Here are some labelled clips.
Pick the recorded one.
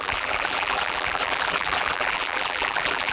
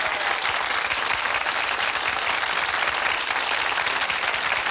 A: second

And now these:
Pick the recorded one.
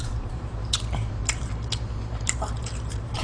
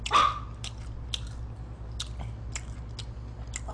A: second